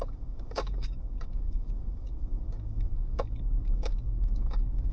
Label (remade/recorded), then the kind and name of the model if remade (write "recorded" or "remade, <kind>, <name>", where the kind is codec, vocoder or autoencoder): remade, codec, DAC